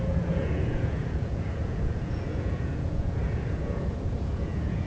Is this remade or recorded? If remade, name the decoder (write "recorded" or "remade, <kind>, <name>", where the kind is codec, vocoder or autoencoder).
remade, vocoder, Vocos